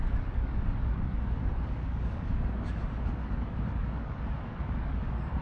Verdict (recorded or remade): remade